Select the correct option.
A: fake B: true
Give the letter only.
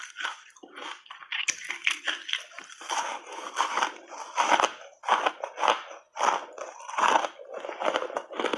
B